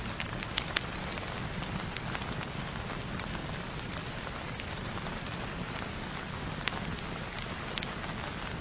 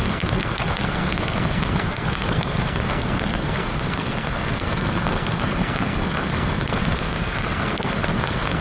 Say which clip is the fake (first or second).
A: second